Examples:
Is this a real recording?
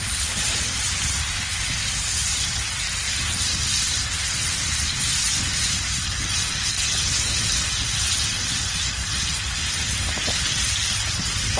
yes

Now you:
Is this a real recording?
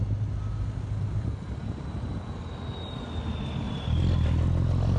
yes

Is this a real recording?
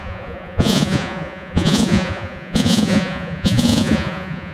no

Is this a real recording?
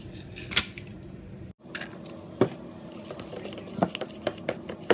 yes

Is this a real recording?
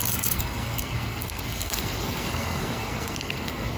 no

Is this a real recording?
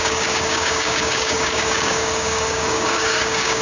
no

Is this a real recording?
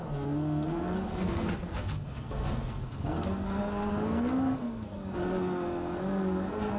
no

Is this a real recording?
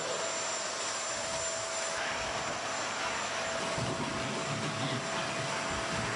yes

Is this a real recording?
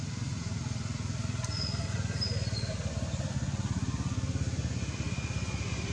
yes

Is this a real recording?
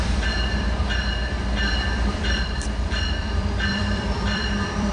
no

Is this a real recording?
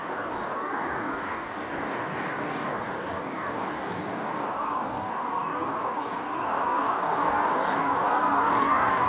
no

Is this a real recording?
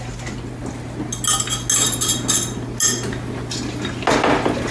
yes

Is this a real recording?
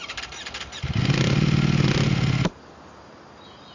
yes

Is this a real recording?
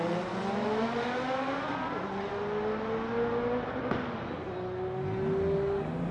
yes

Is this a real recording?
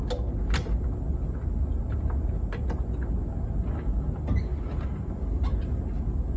yes